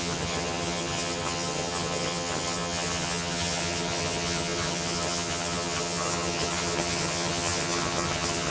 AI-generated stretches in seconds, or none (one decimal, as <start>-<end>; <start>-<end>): 0.0-8.5

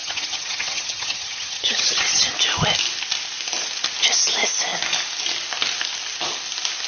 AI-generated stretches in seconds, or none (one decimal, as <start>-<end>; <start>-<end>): 0.0-2.3